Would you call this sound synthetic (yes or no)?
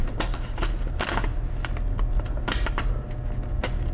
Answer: no